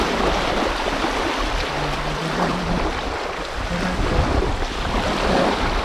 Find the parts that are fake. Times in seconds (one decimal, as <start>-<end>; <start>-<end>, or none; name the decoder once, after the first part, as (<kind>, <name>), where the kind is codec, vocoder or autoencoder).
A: none